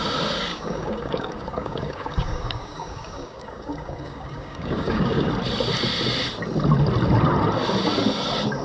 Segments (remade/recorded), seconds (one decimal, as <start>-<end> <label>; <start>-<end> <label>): 0.0-0.5 recorded; 0.5-5.3 remade; 5.3-8.6 recorded